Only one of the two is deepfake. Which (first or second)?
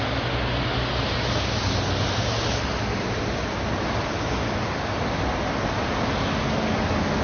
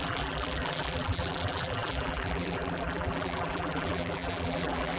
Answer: second